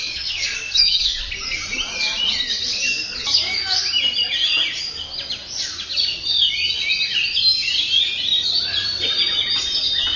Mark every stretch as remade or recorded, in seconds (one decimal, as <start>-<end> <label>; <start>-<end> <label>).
0.0-1.2 remade; 1.2-2.7 recorded; 2.7-3.8 remade; 3.8-10.2 recorded